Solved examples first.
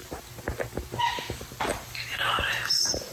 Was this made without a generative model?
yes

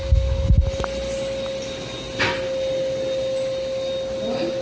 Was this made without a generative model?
yes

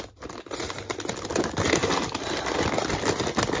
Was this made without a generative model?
yes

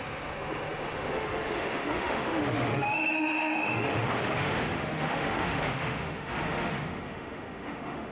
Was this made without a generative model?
no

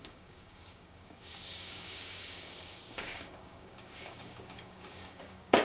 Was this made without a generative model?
no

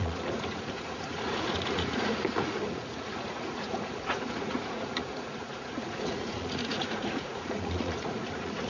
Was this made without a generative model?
no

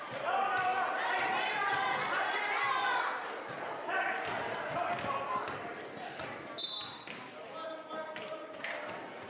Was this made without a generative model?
no